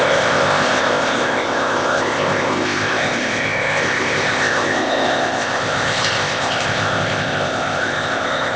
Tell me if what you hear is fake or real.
fake